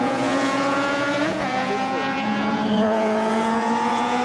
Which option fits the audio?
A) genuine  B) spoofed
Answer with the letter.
B